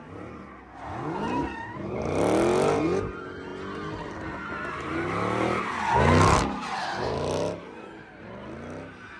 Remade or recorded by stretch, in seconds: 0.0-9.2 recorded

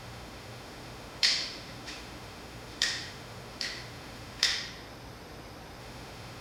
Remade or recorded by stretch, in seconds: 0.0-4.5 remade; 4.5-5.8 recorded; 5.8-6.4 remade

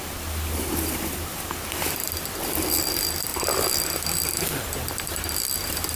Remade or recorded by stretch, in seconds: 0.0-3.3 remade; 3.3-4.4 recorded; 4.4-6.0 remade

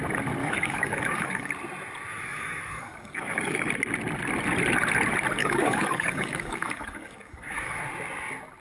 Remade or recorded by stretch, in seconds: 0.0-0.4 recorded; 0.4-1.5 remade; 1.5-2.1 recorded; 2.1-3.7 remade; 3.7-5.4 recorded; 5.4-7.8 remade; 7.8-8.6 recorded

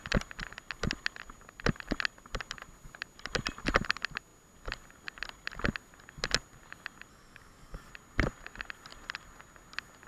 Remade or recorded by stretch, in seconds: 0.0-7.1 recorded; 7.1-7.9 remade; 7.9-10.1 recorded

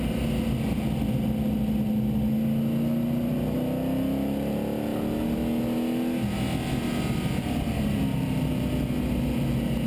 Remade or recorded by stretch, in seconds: 0.0-9.9 recorded